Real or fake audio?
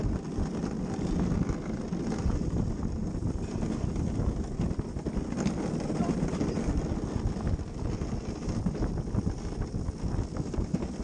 real